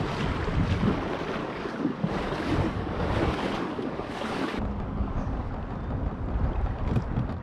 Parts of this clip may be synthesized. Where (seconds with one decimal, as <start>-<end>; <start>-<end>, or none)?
1.4-5.5